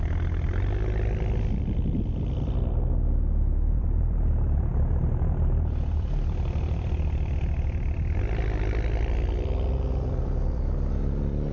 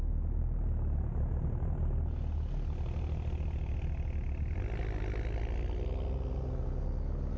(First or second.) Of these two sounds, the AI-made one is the first